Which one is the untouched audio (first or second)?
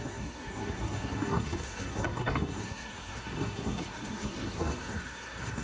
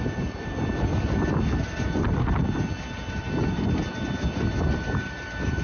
second